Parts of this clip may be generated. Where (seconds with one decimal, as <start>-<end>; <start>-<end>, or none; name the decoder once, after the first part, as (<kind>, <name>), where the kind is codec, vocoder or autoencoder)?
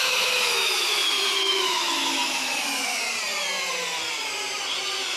0.0-3.0 (autoencoder, DAC-VAE)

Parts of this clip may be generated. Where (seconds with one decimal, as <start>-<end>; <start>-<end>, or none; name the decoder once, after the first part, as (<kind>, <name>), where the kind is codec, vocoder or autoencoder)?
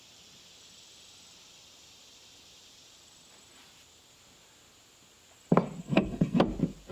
5.8-6.4 (codec, SNAC)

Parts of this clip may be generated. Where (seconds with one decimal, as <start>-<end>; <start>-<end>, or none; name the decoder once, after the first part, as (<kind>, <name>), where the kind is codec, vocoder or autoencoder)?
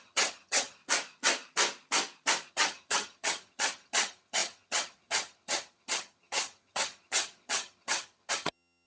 0.0-0.8 (vocoder, HiFi-GAN); 2.5-8.9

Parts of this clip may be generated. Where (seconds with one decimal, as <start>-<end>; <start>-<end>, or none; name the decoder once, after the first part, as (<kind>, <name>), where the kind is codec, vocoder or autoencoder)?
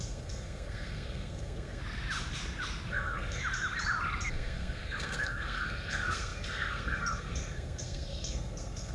0.0-1.8 (codec, SNAC); 2.9-3.4; 4.3-8.9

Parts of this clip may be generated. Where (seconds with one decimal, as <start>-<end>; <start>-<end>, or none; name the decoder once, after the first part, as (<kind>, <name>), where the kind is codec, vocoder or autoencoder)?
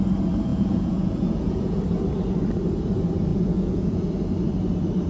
0.5-1.8 (vocoder, Vocos); 3.3-4.1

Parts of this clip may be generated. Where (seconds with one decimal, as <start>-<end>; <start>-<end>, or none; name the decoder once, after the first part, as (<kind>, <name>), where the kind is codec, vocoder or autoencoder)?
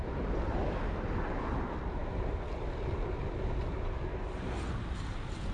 none